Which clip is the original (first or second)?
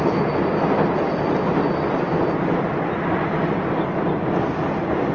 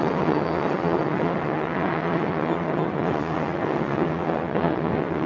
first